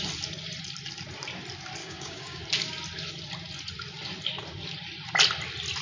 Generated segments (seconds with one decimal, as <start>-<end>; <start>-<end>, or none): 1.8-2.4